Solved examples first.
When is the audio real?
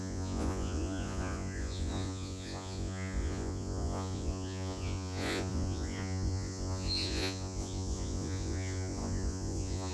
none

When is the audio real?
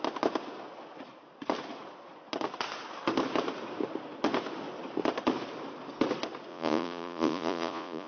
0.0-6.5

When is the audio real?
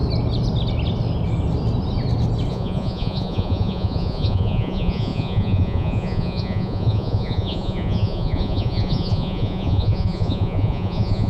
0.0-2.5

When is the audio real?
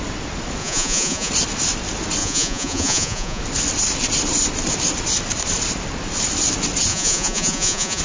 0.0-0.6; 1.3-2.2; 3.4-6.9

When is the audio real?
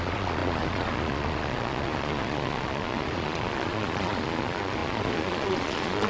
none